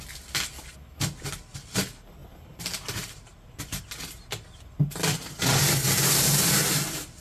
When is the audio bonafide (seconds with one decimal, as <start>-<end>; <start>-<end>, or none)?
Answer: 0.0-2.2; 3.8-7.2